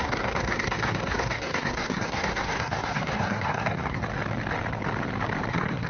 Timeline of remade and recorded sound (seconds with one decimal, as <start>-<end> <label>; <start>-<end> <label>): 0.0-4.0 remade; 4.0-5.5 recorded; 5.5-5.9 remade